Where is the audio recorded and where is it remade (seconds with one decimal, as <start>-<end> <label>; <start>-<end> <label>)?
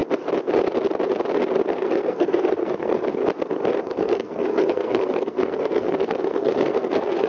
0.0-1.7 recorded; 1.7-3.2 remade; 3.2-3.8 recorded; 3.8-7.3 remade